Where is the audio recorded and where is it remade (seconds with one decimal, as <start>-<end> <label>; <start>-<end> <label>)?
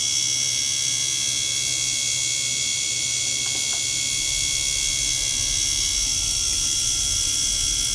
0.0-2.7 recorded; 2.7-3.4 remade; 3.4-6.1 recorded; 6.1-7.5 remade; 7.5-7.9 recorded